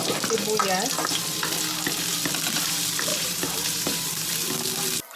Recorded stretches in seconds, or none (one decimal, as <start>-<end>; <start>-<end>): 0.0-3.1; 4.5-5.2